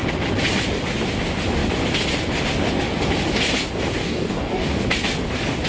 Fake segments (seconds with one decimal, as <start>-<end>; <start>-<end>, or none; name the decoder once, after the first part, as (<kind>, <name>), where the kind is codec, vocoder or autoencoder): 4.0-4.8 (codec, DAC)